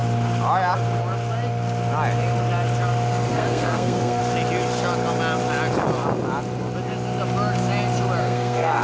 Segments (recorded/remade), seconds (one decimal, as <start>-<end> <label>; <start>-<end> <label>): 0.0-3.3 recorded; 3.3-4.2 remade; 4.2-8.2 recorded; 8.2-8.8 remade